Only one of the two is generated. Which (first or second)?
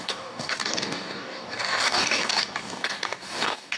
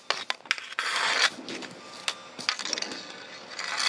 first